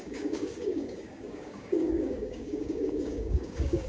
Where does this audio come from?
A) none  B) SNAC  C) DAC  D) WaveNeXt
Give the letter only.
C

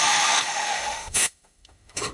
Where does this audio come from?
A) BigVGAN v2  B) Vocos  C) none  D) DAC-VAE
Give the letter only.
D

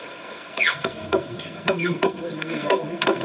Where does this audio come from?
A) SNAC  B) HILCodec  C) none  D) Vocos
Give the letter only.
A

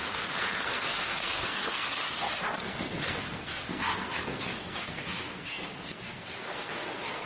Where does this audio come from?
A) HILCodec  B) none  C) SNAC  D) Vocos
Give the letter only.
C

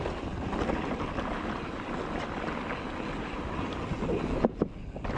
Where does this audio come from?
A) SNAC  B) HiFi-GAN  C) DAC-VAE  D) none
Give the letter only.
D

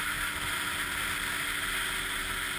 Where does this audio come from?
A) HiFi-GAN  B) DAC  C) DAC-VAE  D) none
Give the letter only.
D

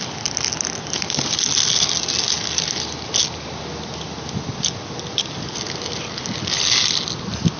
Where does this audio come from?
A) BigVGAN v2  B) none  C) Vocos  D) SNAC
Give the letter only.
B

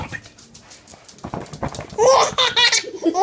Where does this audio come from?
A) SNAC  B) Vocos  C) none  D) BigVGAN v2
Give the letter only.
C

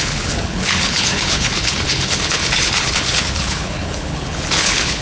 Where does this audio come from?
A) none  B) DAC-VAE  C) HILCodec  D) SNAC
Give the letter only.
C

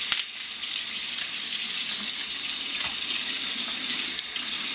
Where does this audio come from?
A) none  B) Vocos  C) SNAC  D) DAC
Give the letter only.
A